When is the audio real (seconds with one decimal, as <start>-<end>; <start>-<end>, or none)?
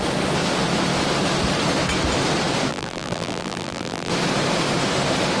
0.0-2.7; 4.1-5.4